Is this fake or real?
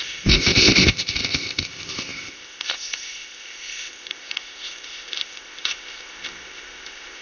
fake